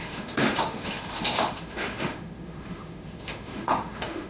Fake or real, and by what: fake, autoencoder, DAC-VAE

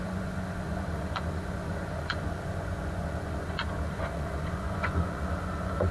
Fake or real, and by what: fake, vocoder, Vocos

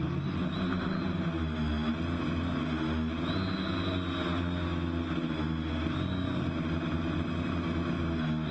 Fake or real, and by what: real